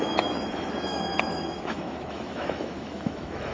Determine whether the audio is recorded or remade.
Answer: remade